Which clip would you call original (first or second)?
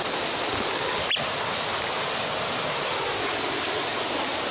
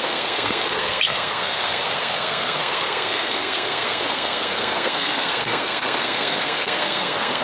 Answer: first